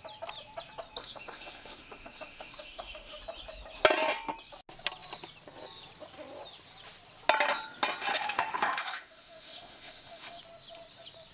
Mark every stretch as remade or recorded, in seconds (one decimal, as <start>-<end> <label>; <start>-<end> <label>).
0.0-1.0 recorded; 1.0-3.2 remade; 3.2-8.1 recorded; 8.1-10.4 remade; 10.4-11.3 recorded